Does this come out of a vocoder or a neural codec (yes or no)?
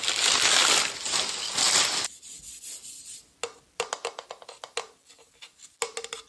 no